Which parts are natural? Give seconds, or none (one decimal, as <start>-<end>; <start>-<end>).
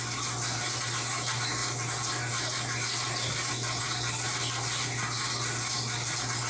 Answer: 0.0-6.5